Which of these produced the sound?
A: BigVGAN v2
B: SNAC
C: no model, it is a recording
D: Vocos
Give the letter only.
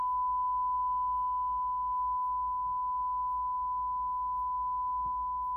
C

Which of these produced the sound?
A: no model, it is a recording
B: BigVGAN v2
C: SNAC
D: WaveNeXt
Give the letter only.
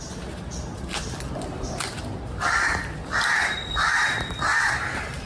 A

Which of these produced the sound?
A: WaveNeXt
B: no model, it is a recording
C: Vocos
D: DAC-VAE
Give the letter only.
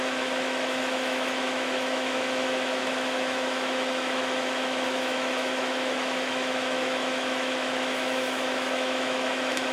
D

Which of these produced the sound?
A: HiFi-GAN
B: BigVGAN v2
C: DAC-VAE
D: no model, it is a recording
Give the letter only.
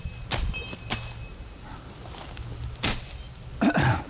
D